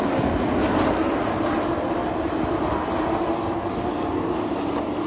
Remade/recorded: recorded